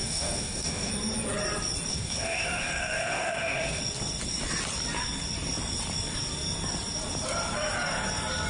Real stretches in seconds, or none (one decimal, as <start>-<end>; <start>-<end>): 0.9-1.9; 3.8-8.5